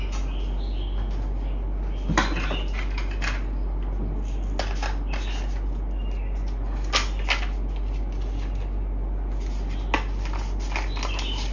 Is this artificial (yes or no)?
no